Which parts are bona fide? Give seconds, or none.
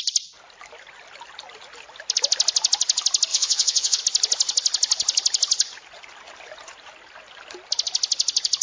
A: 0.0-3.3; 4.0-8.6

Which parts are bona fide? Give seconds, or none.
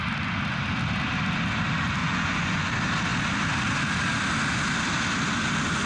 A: 0.0-2.0; 2.7-5.9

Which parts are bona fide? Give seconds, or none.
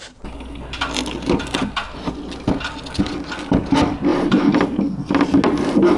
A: 0.0-4.1; 4.6-6.0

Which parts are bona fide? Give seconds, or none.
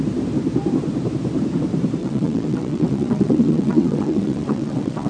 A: 0.0-2.0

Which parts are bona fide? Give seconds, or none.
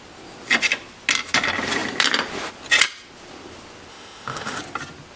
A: 0.0-3.9; 4.6-5.2